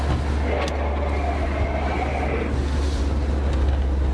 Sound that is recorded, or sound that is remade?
recorded